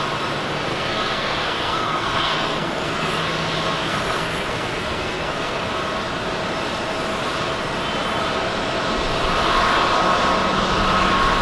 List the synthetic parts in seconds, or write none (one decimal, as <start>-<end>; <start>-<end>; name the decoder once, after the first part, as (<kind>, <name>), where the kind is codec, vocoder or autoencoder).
0.7-3.2 (codec, SNAC); 3.8-5.7